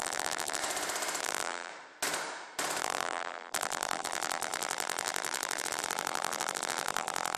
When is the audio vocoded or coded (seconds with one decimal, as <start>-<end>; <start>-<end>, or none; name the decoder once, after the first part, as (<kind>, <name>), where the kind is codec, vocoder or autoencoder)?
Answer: 0.0-0.6 (vocoder, BigVGAN v2); 1.2-1.7; 2.8-7.4